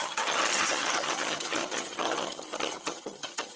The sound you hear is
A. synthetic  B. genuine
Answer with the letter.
A